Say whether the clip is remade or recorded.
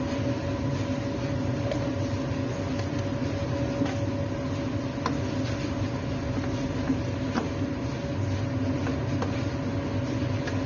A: recorded